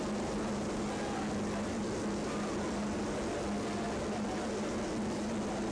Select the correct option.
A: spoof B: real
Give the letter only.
B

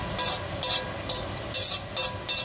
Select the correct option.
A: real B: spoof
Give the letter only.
A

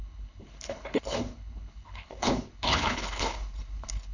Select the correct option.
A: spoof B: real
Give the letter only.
A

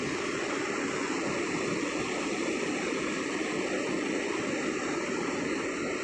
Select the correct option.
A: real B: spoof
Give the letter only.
A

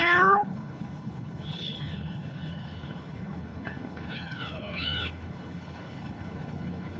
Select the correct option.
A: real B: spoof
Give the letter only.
B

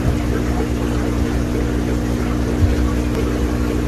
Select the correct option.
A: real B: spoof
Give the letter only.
A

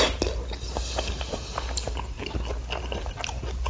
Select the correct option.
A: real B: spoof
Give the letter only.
A